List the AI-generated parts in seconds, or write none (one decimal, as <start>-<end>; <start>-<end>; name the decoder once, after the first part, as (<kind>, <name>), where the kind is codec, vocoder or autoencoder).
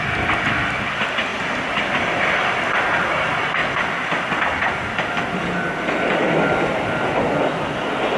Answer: none